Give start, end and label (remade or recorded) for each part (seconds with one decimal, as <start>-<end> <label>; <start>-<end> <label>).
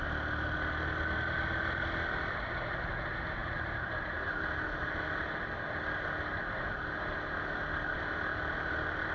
0.0-3.4 recorded; 3.4-5.0 remade; 5.0-9.1 recorded